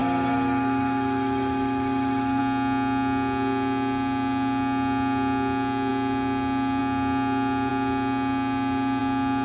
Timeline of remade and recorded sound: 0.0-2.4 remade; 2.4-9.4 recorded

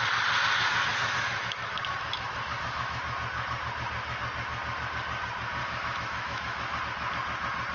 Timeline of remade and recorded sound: 0.0-0.9 recorded; 0.9-3.0 remade; 3.0-5.6 recorded; 5.6-6.8 remade; 6.8-7.7 recorded

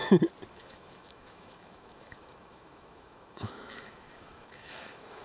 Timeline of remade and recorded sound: 0.0-0.5 recorded; 0.5-5.2 remade

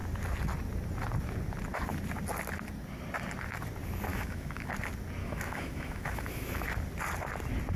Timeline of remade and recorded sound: 0.0-4.1 recorded; 4.1-4.7 remade; 4.7-5.2 recorded; 5.2-6.6 remade; 6.6-7.8 recorded

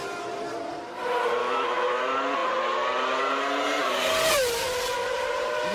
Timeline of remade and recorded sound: 0.0-1.4 recorded; 1.4-2.0 remade; 2.0-5.7 recorded